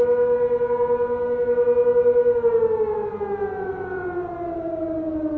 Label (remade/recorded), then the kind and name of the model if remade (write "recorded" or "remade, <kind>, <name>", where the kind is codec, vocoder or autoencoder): recorded